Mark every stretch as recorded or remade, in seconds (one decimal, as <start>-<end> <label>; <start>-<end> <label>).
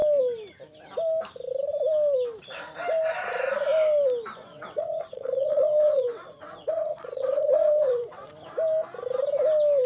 0.0-4.4 recorded; 4.4-8.3 remade; 8.3-9.9 recorded